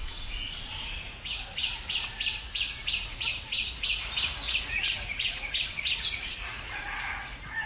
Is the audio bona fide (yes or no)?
no